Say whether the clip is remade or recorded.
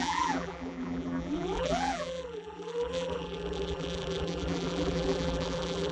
remade